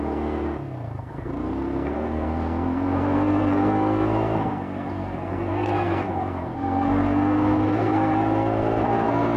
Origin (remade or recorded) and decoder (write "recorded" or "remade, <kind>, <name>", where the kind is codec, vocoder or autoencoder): remade, codec, SNAC